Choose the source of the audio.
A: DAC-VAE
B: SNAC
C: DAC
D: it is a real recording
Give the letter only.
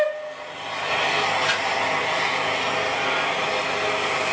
D